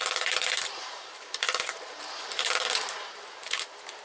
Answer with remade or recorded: remade